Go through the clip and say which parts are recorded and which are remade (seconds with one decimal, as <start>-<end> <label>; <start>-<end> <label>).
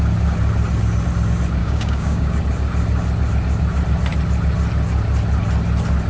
0.0-1.6 recorded; 1.6-2.4 remade; 2.4-6.1 recorded